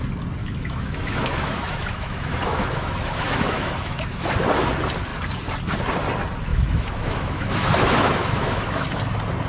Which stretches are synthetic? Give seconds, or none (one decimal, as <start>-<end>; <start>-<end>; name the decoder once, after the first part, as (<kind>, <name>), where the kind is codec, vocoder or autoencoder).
0.4-4.3 (autoencoder, DAC-VAE); 6.5-9.0